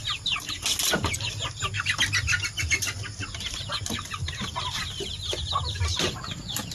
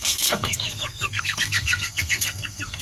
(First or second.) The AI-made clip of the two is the second